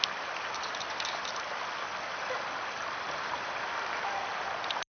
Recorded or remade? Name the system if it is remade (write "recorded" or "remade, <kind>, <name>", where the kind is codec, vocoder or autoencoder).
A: recorded